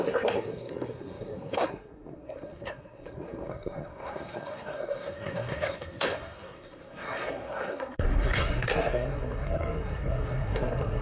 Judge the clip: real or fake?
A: fake